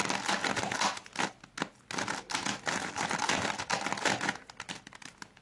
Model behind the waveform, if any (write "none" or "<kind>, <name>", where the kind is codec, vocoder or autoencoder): none